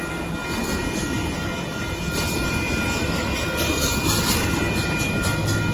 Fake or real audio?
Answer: real